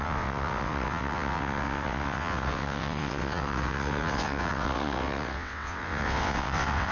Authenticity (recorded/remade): remade